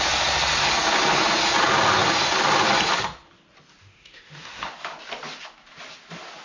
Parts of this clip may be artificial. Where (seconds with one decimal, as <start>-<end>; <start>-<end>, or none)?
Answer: 3.8-4.7